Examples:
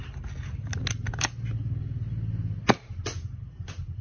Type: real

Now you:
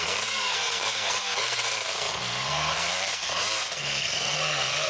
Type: fake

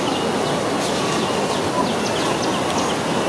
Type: real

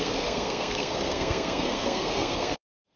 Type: fake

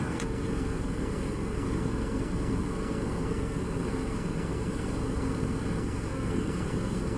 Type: fake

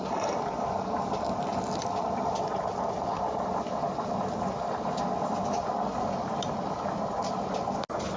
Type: real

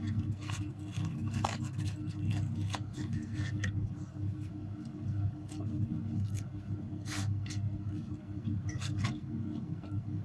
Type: fake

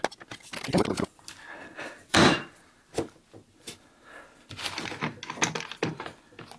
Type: real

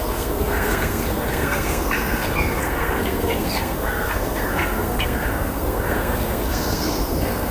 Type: fake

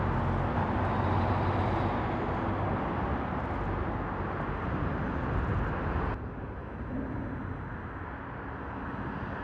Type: real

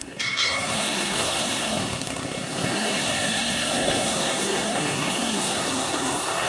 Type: fake